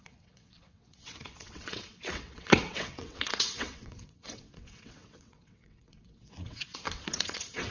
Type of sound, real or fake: fake